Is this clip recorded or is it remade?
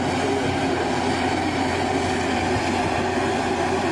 recorded